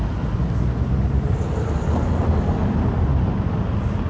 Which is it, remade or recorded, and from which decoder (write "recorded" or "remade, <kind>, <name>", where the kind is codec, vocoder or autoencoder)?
recorded